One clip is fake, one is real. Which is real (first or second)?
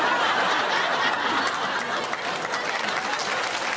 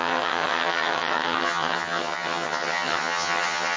first